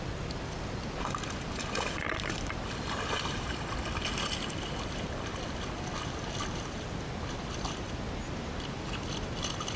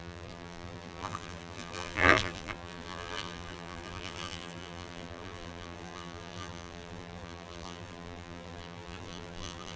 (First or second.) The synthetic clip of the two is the second